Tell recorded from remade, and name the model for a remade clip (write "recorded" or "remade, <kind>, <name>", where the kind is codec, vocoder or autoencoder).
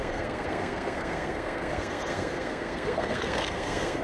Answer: remade, codec, SNAC